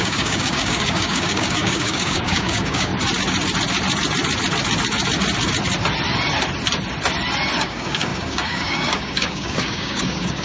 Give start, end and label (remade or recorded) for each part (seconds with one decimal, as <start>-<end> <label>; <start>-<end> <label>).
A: 0.0-2.9 remade; 2.9-7.6 recorded; 7.6-10.4 remade